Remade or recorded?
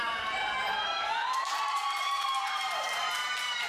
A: remade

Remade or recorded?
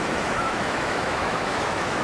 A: remade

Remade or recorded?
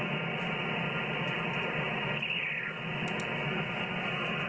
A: recorded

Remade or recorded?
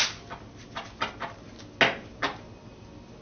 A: recorded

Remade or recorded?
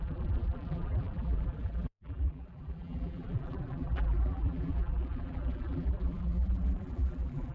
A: remade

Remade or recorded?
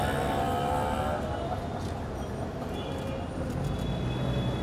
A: recorded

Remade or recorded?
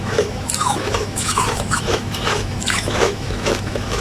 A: remade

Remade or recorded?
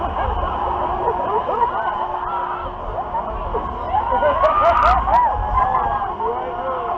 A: recorded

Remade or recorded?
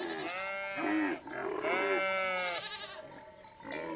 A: recorded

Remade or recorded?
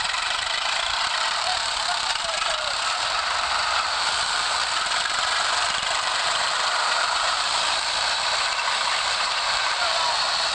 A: remade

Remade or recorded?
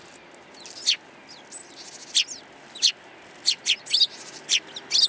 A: recorded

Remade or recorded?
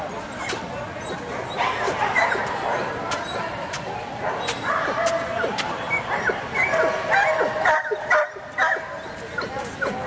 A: recorded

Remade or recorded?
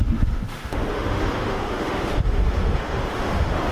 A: remade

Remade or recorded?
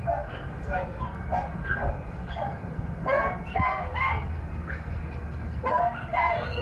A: remade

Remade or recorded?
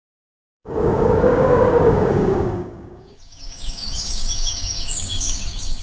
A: remade